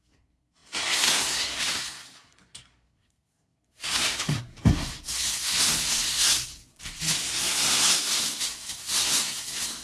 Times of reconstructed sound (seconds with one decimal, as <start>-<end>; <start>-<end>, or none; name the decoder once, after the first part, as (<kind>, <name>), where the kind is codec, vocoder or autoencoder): 0.0-9.8 (codec, SNAC)